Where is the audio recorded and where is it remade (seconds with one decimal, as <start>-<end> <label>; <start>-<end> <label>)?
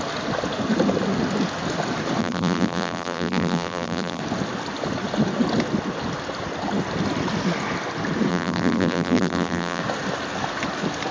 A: 0.0-2.2 recorded; 2.2-4.2 remade; 4.2-8.3 recorded; 8.3-9.8 remade; 9.8-11.1 recorded